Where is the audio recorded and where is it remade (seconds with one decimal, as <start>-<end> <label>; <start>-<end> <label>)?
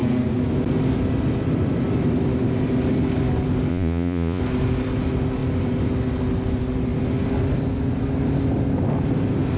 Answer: 0.0-3.7 recorded; 3.7-4.4 remade; 4.4-9.6 recorded